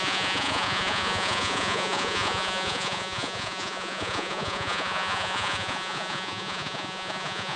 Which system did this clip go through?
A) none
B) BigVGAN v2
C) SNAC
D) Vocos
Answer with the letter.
D